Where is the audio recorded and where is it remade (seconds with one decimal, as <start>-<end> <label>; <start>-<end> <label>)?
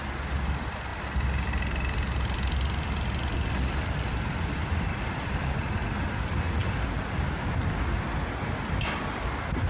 0.0-9.7 recorded